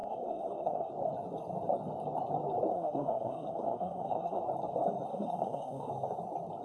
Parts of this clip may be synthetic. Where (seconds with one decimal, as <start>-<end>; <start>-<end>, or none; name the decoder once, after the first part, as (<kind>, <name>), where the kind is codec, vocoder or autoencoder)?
0.0-0.9 (codec, SNAC); 2.7-4.4; 5.1-5.9